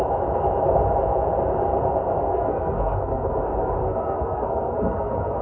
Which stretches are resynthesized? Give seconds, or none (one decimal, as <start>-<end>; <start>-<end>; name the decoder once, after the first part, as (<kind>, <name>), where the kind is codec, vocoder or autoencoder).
2.3-3.4 (codec, SNAC); 3.8-5.4